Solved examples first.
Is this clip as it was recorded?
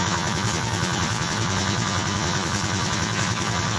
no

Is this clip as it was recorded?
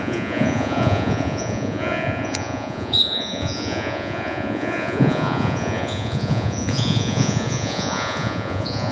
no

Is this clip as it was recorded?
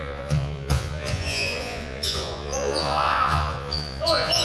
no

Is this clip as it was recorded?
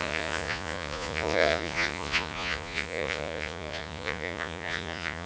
no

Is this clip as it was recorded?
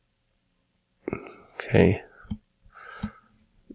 yes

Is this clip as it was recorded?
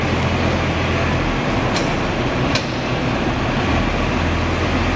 yes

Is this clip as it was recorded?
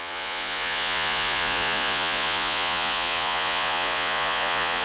no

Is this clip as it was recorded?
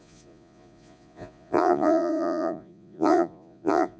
no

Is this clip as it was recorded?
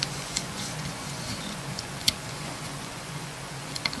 no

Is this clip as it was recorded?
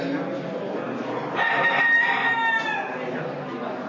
yes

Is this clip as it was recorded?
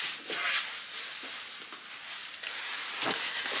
yes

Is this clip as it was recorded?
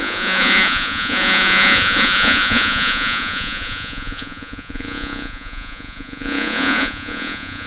no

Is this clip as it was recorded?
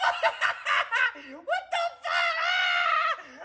yes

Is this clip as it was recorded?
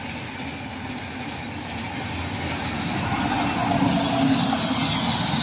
yes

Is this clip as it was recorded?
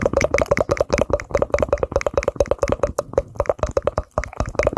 yes